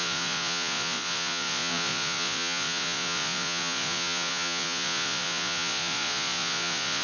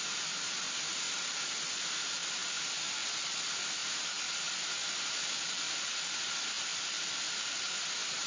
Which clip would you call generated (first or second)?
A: first